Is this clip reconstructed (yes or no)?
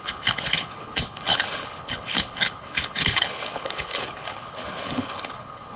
yes